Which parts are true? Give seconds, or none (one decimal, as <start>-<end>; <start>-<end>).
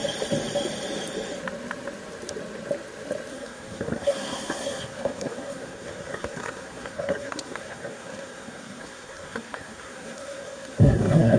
0.0-3.3